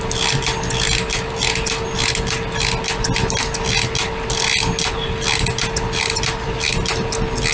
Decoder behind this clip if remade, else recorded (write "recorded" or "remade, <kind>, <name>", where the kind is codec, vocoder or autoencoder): recorded